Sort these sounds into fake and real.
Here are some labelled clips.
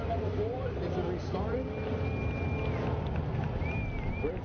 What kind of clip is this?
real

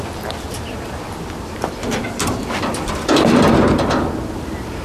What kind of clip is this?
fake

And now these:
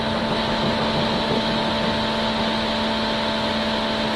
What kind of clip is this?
real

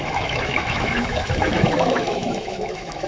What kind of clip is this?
fake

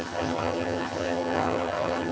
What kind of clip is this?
fake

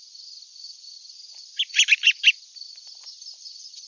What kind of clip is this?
real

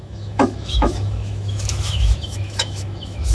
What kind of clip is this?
fake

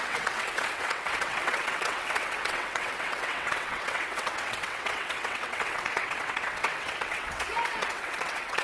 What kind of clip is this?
fake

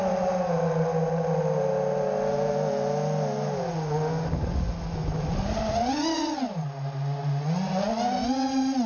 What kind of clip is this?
real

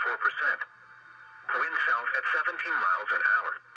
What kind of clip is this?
real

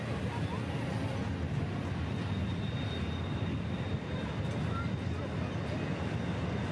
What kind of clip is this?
real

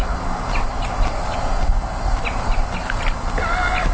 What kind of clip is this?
real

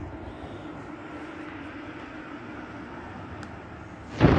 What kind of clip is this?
real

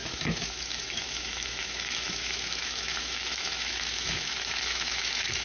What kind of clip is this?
fake